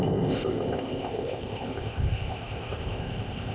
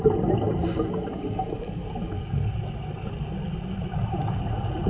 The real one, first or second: second